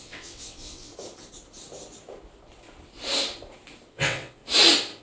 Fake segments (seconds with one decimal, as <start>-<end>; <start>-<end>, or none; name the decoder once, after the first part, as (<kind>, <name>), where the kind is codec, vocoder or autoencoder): 0.0-0.9 (vocoder, WaveNeXt); 3.9-4.4